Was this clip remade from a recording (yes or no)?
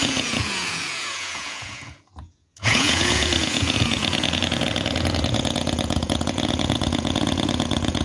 yes